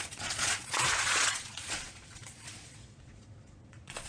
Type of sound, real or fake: fake